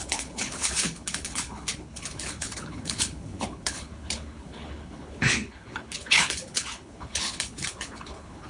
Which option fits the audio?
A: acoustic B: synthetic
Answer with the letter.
B